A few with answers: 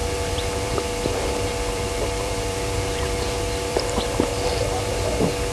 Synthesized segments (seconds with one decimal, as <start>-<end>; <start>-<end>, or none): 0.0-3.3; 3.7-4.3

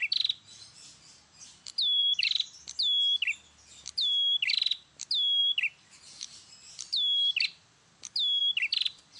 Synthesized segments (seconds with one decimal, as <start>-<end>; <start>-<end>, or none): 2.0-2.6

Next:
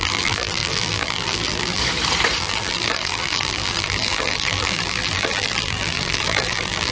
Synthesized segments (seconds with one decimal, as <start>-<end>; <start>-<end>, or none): 0.0-1.8; 2.4-6.9

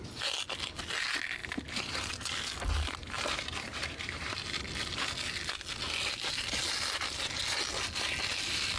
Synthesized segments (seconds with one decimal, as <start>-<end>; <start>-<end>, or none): 1.4-2.1; 3.0-4.6

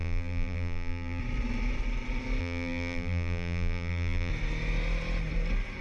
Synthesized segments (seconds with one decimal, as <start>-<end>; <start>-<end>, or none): 0.0-1.2; 2.4-4.3